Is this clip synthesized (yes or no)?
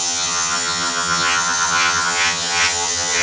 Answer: yes